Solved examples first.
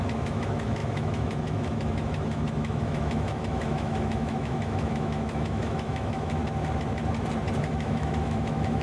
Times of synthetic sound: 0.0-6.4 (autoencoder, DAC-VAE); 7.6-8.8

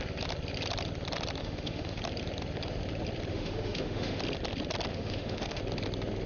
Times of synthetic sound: 1.4-2.0 (autoencoder, DAC-VAE); 3.3-4.2; 4.9-5.6

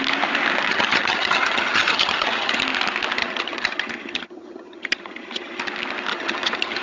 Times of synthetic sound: 0.7-2.6 (vocoder, HiFi-GAN); 3.2-5.6; 6.1-6.8

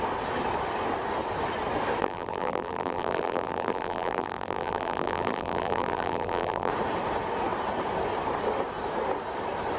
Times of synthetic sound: 2.0-6.7 (vocoder, BigVGAN v2)

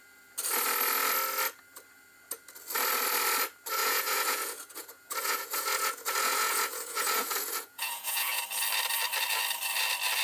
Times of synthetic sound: 3.8-8.4 (vocoder, Vocos)

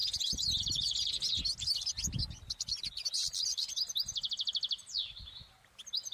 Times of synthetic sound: none

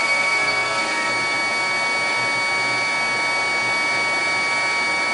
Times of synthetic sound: 0.0-1.1 (codec, SNAC)

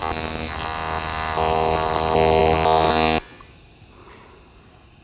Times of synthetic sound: none